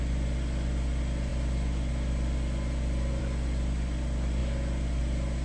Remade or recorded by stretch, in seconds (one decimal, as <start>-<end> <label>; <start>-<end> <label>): 0.0-5.4 recorded